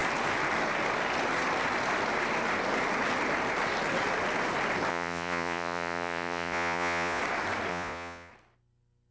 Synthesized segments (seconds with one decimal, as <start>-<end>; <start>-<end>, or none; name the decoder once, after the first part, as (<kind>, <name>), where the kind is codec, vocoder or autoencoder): 4.9-7.2 (vocoder, Vocos); 7.7-8.3